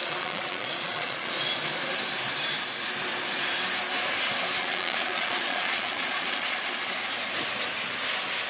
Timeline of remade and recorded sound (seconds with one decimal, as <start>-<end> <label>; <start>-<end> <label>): 0.0-1.3 remade; 1.3-4.6 recorded; 4.6-6.6 remade; 6.6-8.5 recorded